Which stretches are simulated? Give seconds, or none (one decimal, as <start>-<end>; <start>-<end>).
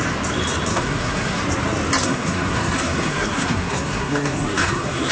0.7-1.4; 2.0-5.1